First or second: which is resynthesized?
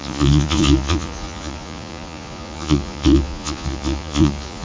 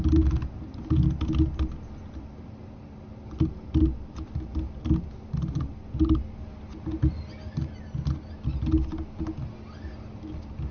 first